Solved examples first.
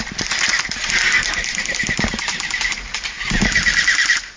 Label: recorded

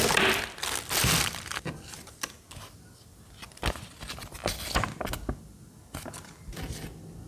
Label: recorded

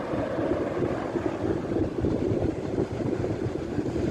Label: remade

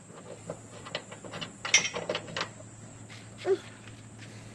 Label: recorded